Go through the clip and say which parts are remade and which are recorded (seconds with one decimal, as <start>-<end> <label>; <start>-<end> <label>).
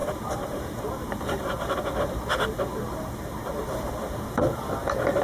0.0-5.2 remade